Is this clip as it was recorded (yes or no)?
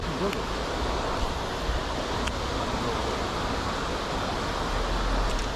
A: yes